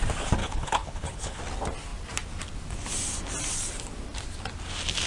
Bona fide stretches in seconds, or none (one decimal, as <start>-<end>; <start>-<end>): 0.0-0.4; 1.4-5.1